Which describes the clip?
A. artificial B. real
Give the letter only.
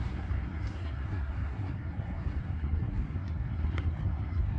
A